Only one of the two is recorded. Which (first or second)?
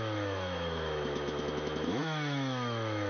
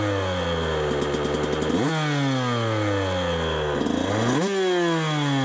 second